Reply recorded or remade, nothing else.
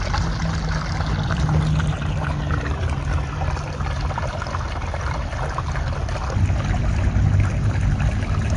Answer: recorded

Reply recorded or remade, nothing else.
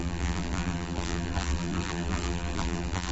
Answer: remade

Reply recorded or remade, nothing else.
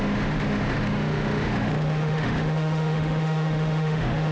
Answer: remade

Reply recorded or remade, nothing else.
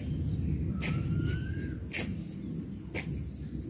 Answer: recorded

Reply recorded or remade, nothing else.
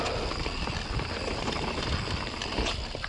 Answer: recorded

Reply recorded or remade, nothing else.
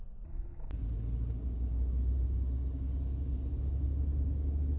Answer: recorded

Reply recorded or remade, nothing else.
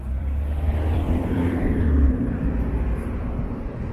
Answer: remade